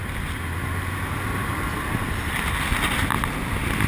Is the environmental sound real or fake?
real